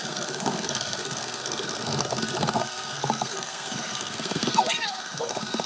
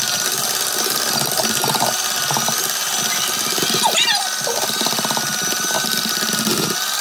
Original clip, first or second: second